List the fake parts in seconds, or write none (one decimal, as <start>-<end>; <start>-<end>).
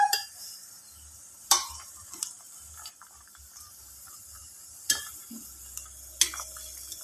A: 0.0-4.4